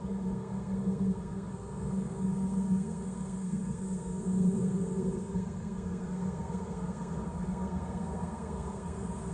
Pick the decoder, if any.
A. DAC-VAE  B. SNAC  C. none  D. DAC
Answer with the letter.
B